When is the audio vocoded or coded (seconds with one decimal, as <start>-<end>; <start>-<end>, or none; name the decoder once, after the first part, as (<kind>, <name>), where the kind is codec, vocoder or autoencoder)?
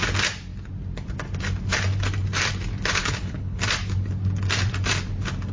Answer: 3.0-3.6 (codec, HILCodec)